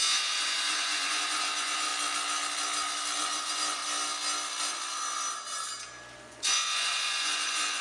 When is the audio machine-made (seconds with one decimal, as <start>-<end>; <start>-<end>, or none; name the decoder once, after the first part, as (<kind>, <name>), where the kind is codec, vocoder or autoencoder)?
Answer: 0.0-1.9 (vocoder, Vocos); 3.2-3.8; 6.2-7.8